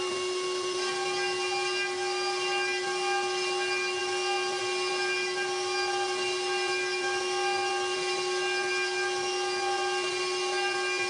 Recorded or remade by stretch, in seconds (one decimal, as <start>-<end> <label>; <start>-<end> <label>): 0.0-11.1 recorded